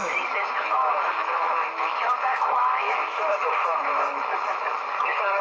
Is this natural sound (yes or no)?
no